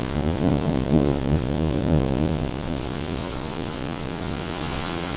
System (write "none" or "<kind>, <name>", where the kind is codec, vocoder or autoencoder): vocoder, Vocos